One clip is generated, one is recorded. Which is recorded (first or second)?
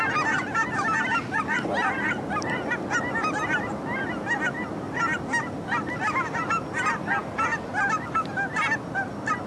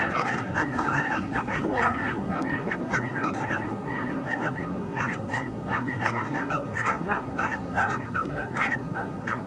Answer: first